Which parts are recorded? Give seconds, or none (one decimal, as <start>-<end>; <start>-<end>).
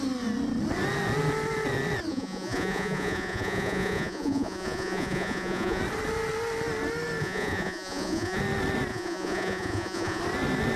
0.0-2.1; 5.8-7.2; 8.4-8.9; 10.2-10.8